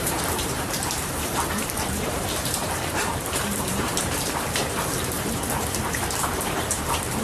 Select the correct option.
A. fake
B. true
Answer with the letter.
A